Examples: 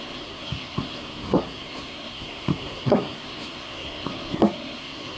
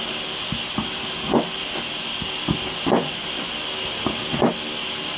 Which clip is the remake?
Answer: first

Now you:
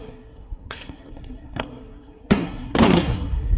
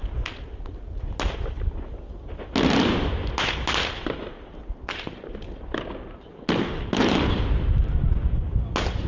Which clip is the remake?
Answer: first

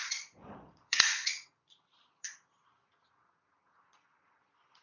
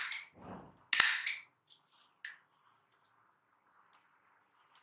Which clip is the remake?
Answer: first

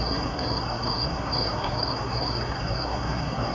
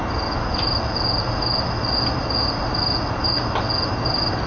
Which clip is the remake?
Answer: first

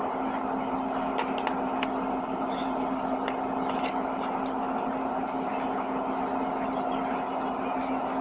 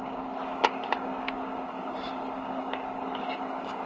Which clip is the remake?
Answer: second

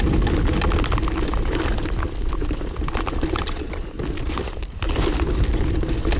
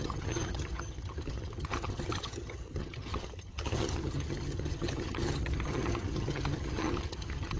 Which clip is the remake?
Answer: second